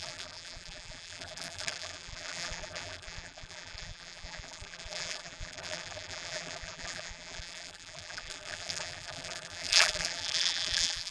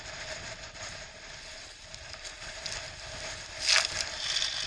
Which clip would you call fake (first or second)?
first